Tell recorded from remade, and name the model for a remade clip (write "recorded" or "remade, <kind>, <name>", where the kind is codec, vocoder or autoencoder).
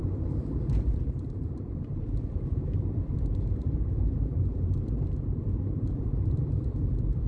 remade, vocoder, BigVGAN v2